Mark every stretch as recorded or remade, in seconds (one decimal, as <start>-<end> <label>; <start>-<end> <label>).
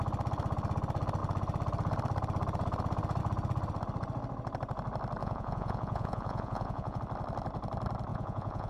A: 0.0-5.2 recorded; 5.2-7.0 remade; 7.0-8.1 recorded; 8.1-8.7 remade